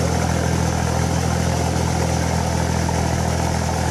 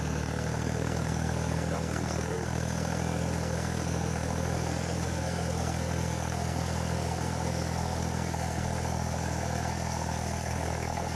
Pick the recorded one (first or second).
first